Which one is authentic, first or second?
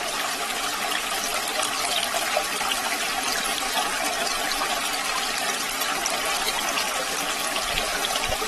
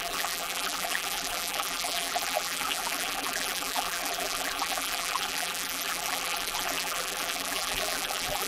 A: first